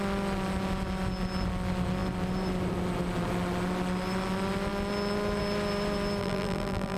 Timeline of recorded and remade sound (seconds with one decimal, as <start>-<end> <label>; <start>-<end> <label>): 0.0-6.2 recorded; 6.2-7.0 remade